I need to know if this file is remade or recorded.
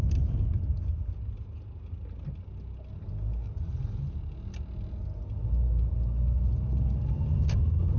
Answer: recorded